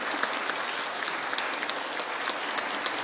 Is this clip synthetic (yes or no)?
no